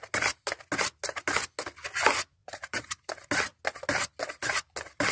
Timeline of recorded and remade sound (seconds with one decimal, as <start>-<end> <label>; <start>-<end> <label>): 0.0-2.4 recorded; 2.4-3.1 remade; 3.1-5.1 recorded

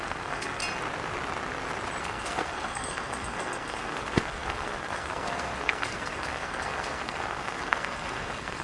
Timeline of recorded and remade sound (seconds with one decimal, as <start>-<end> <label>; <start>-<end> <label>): 0.0-0.6 remade; 0.6-2.0 recorded; 2.0-8.6 remade

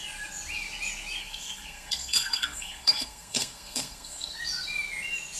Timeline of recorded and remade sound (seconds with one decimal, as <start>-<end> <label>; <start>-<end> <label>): 0.0-1.2 recorded; 1.2-4.4 remade; 4.4-5.4 recorded

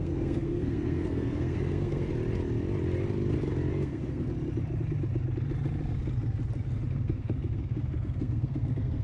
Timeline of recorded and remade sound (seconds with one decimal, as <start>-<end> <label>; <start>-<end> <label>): 0.0-2.1 remade; 2.1-3.7 recorded; 3.7-4.3 remade; 4.3-6.9 recorded; 6.9-9.0 remade

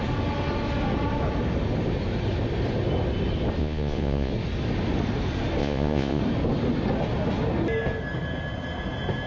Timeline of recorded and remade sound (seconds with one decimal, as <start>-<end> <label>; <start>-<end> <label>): 0.0-3.6 recorded; 3.6-4.3 remade; 4.3-5.6 recorded; 5.6-6.2 remade; 6.2-9.3 recorded

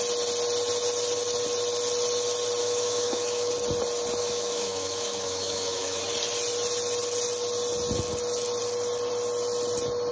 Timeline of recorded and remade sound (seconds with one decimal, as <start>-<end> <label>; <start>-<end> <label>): 0.0-2.6 recorded; 2.6-3.5 remade; 3.5-4.2 recorded; 4.2-6.0 remade; 6.0-10.1 recorded

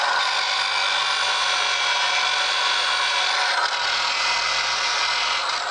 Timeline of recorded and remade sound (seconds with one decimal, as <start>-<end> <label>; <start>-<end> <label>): 0.0-5.7 recorded